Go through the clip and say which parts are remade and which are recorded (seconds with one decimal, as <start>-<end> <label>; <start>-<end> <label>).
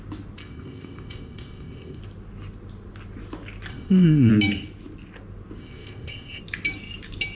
0.0-0.4 recorded; 0.4-2.0 remade; 2.0-3.7 recorded; 3.7-4.3 remade; 4.3-5.6 recorded; 5.6-6.4 remade; 6.4-7.3 recorded